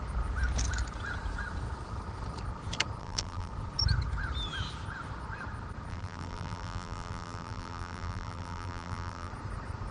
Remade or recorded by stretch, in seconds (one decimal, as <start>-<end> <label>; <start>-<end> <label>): 0.0-3.0 recorded; 3.0-3.5 remade; 3.5-5.9 recorded; 5.9-9.3 remade; 9.3-9.9 recorded